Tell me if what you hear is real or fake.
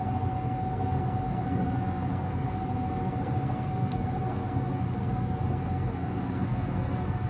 fake